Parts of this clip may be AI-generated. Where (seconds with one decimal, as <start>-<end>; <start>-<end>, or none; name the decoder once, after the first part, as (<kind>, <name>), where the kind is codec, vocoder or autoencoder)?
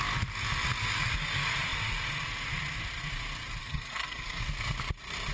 3.6-4.4 (codec, SNAC)